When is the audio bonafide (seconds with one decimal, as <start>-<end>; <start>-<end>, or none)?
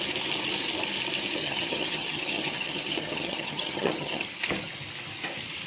0.0-1.4; 4.2-5.7